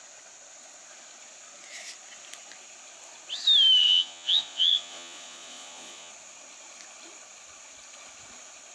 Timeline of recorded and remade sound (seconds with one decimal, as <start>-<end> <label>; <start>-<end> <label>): 0.0-3.8 recorded; 3.8-6.1 remade; 6.1-8.7 recorded